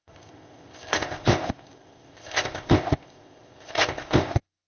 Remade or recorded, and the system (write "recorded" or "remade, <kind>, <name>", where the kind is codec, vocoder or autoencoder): remade, codec, ZipCodec